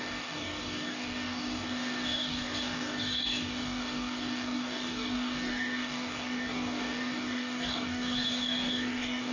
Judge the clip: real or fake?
fake